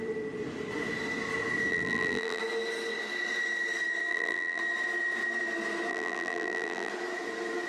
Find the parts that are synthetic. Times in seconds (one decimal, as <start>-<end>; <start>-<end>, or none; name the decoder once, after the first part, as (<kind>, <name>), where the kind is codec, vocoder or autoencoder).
1.7-2.4 (vocoder, BigVGAN v2); 4.1-4.6; 5.9-6.9